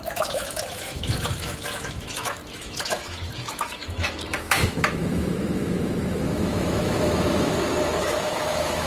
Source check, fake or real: fake